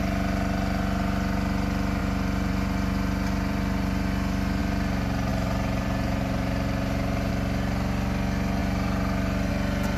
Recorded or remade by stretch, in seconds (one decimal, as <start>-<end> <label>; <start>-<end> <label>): 0.0-2.0 recorded; 2.0-4.6 remade; 4.6-5.3 recorded; 5.3-7.3 remade; 7.3-8.6 recorded; 8.6-9.5 remade; 9.5-10.0 recorded